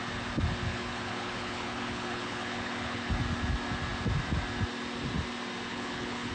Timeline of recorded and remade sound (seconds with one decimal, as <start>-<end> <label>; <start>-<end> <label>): 0.0-0.7 recorded; 0.7-3.1 remade; 3.1-5.7 recorded; 5.7-6.3 remade